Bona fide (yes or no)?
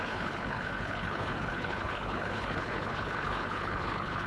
no